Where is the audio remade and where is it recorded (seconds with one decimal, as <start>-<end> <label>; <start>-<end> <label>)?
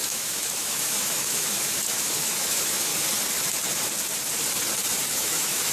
0.0-2.9 remade; 2.9-5.1 recorded; 5.1-5.7 remade